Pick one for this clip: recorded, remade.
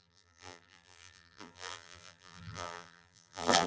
remade